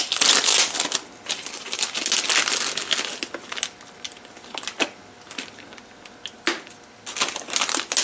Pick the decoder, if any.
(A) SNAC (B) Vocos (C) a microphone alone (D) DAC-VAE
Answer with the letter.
C